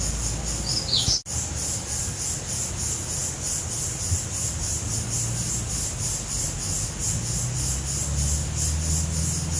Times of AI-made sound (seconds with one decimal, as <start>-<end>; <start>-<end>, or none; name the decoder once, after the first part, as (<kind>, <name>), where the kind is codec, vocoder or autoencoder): none